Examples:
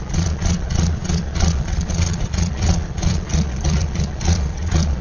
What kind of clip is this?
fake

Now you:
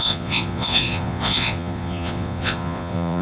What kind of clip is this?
fake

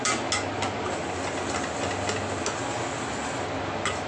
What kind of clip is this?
real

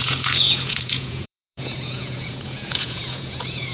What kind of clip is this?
fake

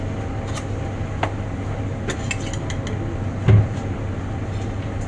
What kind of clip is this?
real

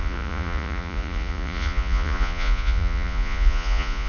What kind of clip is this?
fake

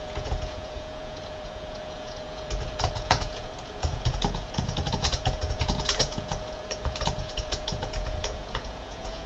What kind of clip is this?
fake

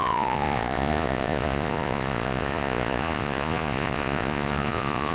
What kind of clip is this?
fake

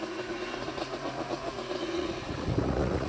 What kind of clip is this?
fake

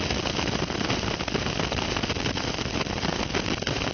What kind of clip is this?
real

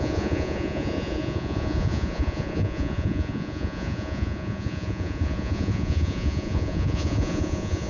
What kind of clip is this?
fake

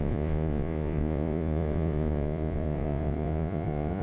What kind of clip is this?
fake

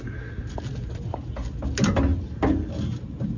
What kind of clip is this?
real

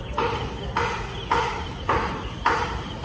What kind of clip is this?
real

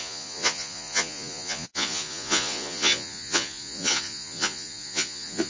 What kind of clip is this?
fake